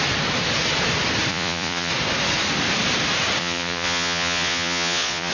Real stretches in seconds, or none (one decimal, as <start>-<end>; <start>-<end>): 0.0-1.3; 1.9-3.4